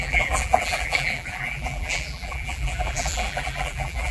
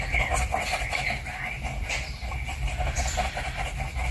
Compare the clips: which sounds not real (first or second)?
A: first